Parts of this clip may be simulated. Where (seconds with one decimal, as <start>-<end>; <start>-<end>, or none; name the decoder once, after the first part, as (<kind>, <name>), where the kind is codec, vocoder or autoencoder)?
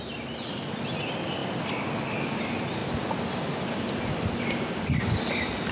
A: none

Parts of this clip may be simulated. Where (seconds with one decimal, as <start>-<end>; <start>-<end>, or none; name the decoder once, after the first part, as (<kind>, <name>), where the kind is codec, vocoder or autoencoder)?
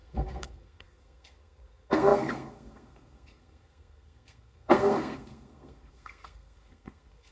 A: 0.0-7.3 (codec, SNAC)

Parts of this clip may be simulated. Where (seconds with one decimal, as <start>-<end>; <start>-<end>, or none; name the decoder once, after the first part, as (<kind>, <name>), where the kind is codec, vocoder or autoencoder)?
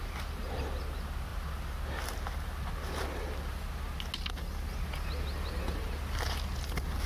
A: none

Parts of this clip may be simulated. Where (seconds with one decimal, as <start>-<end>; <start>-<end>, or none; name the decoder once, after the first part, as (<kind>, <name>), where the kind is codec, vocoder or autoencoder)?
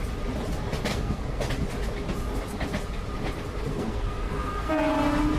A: 0.9-1.5 (codec, SNAC); 3.7-4.7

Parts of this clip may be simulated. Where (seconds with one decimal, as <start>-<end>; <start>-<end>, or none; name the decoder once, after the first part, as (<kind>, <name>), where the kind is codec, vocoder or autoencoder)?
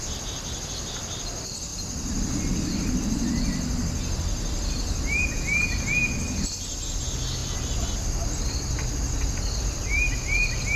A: none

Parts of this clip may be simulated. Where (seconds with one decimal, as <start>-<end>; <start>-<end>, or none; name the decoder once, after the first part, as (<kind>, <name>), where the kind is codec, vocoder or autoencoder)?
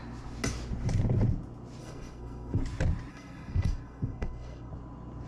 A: 1.8-2.6 (codec, SNAC); 3.1-4.7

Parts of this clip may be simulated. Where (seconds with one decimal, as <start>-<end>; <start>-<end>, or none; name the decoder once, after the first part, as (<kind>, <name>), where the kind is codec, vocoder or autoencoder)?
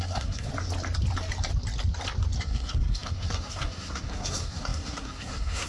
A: 0.0-0.5 (codec, SNAC); 2.4-5.7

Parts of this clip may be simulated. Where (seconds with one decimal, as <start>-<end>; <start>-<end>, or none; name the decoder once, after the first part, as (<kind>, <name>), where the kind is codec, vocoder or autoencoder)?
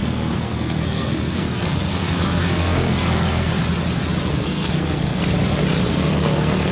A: 0.0-3.5 (codec, SNAC); 4.3-5.2; 5.9-6.7